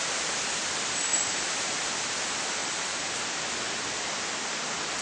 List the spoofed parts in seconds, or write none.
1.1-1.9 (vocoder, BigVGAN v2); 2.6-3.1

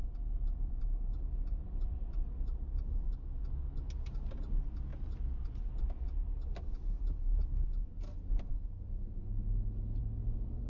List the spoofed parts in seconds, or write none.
1.6-2.6 (vocoder, BigVGAN v2); 4.9-5.8; 8.5-10.2

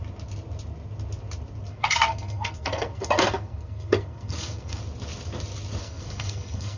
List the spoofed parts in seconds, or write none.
1.7-4.8 (codec, SNAC); 5.8-6.8

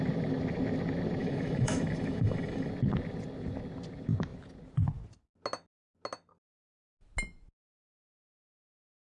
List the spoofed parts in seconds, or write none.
1.2-2.7 (autoencoder, DAC-VAE)

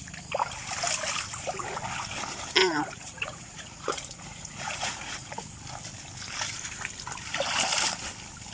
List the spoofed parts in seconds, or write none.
2.6-5.3 (vocoder, Vocos)

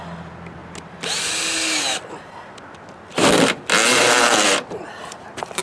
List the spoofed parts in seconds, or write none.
none